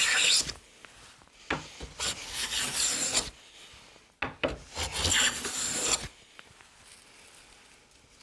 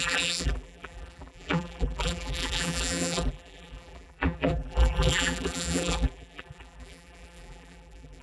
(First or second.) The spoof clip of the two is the second